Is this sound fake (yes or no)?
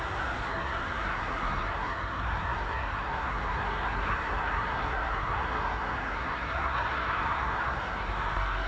yes